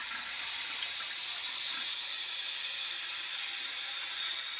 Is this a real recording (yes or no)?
no